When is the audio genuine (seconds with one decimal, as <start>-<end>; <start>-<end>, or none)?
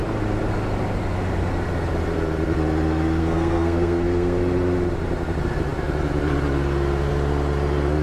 0.0-3.2; 4.4-8.0